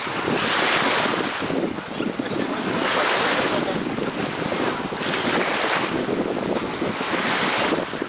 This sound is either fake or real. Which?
real